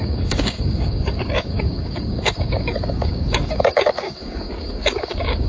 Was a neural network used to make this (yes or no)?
yes